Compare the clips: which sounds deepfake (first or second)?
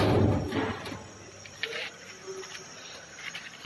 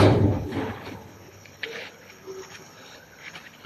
second